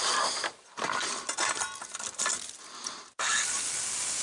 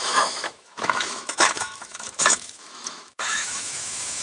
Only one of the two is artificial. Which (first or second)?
second